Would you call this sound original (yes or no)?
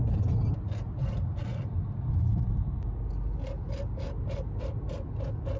yes